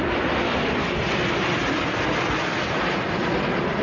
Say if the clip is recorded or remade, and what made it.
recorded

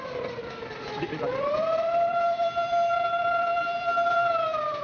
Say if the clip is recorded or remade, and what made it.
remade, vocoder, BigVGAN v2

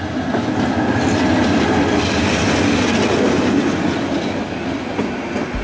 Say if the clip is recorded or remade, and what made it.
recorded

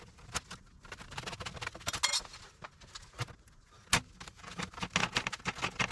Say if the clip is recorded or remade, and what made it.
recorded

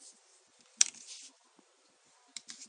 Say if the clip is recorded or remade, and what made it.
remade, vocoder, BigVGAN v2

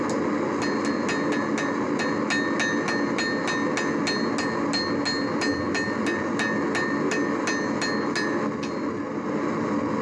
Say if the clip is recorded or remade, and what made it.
recorded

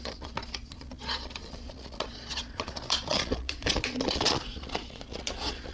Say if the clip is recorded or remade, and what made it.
remade, vocoder, Vocos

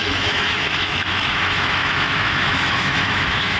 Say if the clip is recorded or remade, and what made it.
remade, autoencoder, DAC-VAE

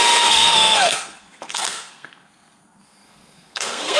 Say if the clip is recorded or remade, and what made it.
remade, codec, SNAC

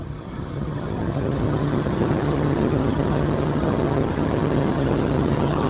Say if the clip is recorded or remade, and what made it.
remade, vocoder, HiFi-GAN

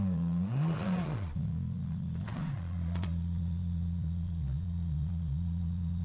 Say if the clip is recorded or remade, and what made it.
remade, vocoder, Vocos